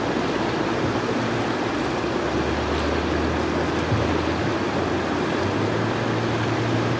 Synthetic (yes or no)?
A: no